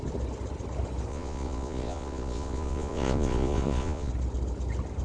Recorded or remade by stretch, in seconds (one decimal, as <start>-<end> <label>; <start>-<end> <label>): 0.0-1.1 recorded; 1.1-4.1 remade; 4.1-5.0 recorded